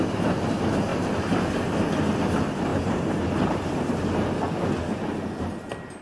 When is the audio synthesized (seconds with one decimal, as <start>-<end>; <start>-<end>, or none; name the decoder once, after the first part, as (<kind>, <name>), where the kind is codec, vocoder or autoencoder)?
0.9-1.5 (vocoder, BigVGAN v2); 2.7-3.9